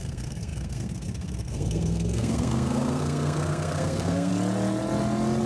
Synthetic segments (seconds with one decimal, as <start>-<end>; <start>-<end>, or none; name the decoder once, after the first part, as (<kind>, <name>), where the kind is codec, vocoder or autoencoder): 0.0-4.3 (codec, SNAC)